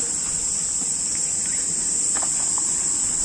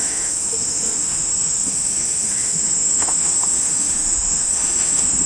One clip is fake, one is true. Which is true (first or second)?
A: first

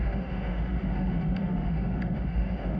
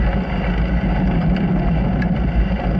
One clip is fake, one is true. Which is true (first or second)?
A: second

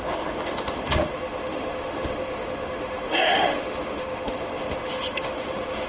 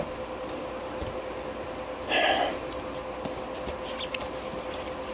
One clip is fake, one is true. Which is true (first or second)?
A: second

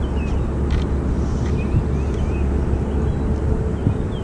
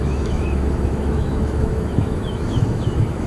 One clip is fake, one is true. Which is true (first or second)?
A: first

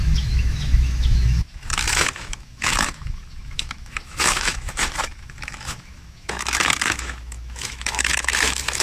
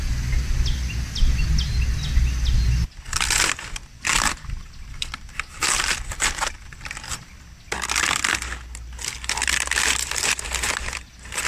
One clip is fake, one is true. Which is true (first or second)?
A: second